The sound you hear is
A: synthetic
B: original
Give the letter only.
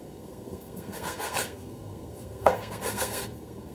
A